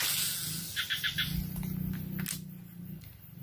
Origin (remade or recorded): recorded